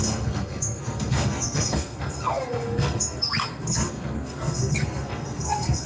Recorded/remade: remade